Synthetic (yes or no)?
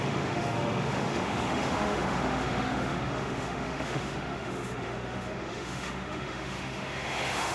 yes